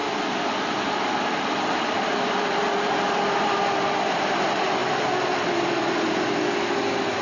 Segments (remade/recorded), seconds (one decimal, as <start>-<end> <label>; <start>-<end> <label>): 0.0-4.3 remade; 4.3-4.8 recorded; 4.8-6.7 remade; 6.7-7.2 recorded